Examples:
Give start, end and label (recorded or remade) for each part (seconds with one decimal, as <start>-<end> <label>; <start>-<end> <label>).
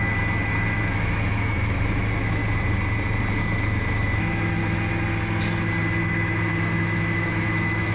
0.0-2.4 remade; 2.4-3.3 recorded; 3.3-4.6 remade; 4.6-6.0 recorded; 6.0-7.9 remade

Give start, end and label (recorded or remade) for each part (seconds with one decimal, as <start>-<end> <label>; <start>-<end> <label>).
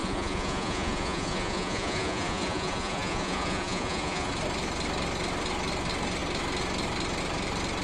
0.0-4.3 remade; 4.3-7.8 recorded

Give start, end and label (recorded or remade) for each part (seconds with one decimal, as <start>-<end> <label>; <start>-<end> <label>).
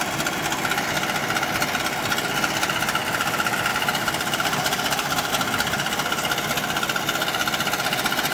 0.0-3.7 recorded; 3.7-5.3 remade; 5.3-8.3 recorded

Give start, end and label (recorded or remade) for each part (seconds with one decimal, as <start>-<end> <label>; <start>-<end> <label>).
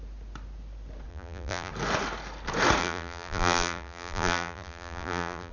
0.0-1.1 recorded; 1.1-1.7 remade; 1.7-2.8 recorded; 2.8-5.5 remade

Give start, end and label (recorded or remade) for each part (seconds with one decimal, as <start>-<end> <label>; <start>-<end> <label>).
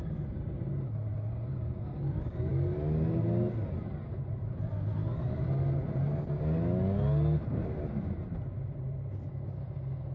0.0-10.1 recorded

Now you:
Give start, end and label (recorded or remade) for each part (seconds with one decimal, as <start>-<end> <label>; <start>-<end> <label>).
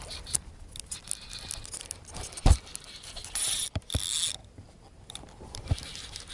0.0-6.3 recorded